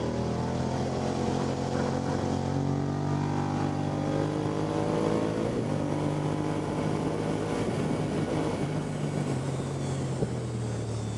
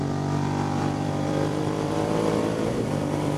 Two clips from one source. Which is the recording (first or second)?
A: first